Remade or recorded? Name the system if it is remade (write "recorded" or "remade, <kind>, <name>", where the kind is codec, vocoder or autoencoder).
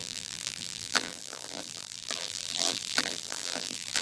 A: remade, vocoder, BigVGAN v2